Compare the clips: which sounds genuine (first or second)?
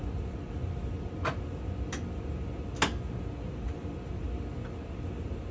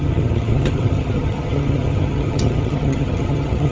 first